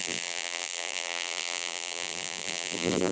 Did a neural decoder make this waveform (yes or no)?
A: yes